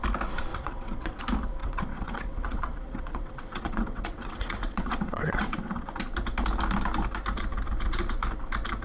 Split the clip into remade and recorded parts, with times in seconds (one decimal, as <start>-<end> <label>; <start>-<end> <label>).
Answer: 0.0-0.5 recorded; 0.5-1.2 remade; 1.2-1.6 recorded; 1.6-6.0 remade; 6.0-8.8 recorded